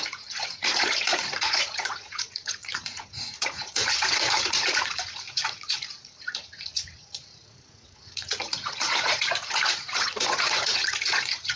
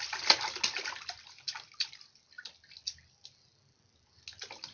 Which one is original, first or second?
second